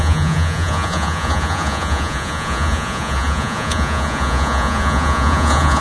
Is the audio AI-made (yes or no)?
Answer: yes